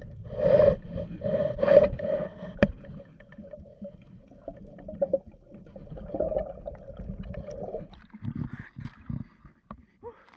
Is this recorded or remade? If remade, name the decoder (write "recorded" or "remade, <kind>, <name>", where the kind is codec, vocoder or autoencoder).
recorded